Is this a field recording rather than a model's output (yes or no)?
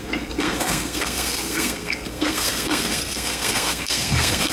no